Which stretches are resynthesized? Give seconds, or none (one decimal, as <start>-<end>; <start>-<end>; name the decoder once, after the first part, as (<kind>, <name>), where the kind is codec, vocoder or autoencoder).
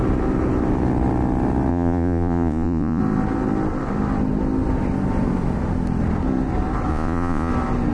1.7-3.0 (vocoder, Vocos); 6.9-7.5